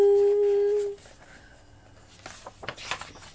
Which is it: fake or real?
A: real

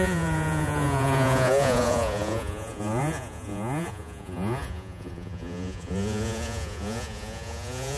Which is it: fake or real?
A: fake